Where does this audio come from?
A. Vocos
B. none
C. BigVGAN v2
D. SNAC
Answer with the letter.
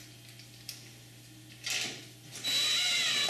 B